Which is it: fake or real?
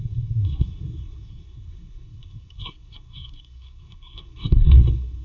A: fake